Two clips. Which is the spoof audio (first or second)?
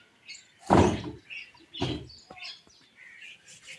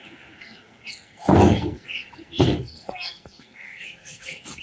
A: second